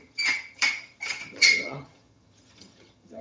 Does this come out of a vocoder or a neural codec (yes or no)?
yes